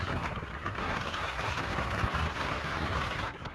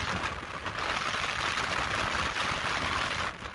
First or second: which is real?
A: second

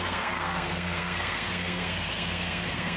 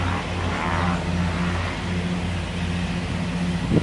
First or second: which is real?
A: second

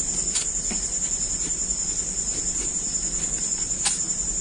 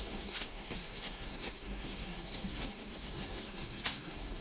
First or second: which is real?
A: first